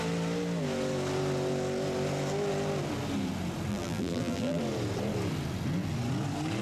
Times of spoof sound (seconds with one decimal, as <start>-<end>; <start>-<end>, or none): 3.7-4.6